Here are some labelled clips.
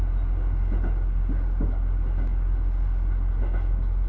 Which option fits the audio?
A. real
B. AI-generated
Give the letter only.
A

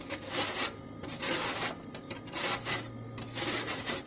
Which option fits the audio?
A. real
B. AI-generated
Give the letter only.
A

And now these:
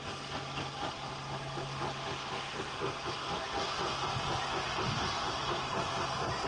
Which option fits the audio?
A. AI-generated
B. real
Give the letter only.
B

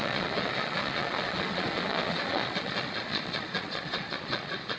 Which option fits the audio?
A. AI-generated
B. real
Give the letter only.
A